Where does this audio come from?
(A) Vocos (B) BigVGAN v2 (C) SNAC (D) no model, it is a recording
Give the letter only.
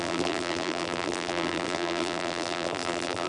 B